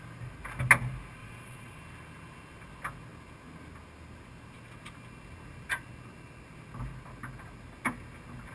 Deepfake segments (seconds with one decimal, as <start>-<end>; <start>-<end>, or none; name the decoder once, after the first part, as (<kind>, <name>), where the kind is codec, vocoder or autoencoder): 1.2-1.8 (vocoder, Vocos)